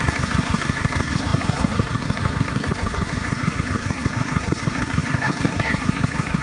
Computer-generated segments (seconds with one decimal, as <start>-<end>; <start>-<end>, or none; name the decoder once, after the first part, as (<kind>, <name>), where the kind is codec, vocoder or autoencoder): 0.0-6.4 (codec, SNAC)